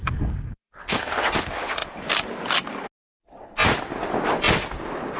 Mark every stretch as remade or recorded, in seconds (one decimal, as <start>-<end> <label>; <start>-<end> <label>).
0.0-1.1 remade; 1.1-5.2 recorded